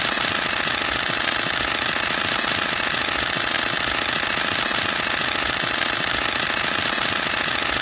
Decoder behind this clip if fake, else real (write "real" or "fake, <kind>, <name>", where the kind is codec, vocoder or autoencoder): real